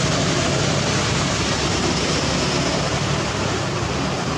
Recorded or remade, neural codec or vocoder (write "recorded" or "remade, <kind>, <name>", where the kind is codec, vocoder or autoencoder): recorded